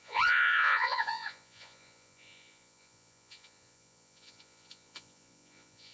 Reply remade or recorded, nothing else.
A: remade